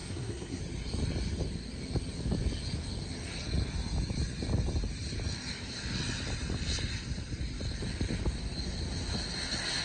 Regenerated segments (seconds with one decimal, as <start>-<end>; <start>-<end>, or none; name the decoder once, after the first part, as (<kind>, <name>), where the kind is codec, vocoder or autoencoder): 0.0-0.6 (codec, SNAC)